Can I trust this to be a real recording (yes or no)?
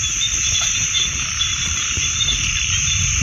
no